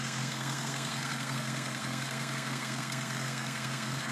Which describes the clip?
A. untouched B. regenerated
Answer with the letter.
B